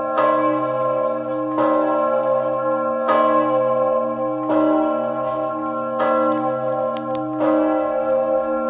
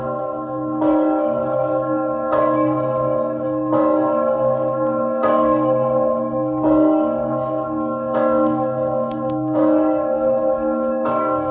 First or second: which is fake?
second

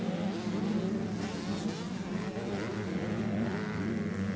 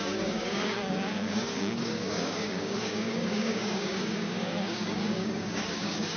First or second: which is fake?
second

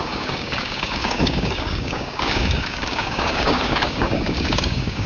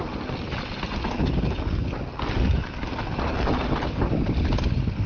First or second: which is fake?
first